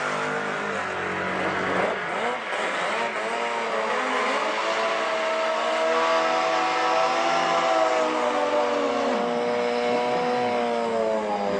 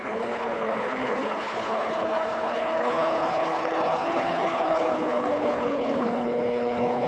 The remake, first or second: second